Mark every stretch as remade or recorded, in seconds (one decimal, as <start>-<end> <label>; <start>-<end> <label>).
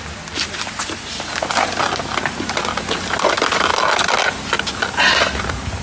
0.0-5.8 recorded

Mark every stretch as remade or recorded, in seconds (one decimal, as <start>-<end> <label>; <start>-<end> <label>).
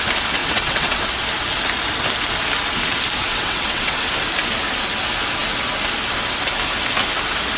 0.0-0.4 recorded; 0.4-1.0 remade; 1.0-3.3 recorded; 3.3-4.1 remade; 4.1-7.6 recorded